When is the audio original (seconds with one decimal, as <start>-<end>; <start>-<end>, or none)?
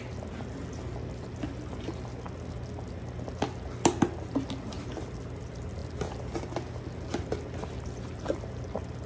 0.0-9.1